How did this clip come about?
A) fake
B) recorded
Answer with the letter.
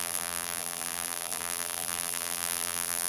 A